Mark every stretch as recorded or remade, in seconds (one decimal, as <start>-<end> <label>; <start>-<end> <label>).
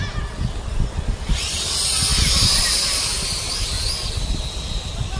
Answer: 0.0-5.2 recorded